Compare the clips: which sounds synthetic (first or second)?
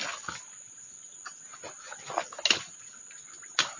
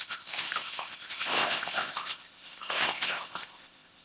second